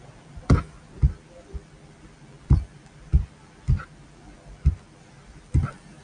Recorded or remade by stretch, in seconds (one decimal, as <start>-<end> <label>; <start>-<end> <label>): 0.0-6.0 recorded